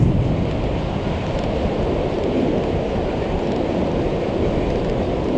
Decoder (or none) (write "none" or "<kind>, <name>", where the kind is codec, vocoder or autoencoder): none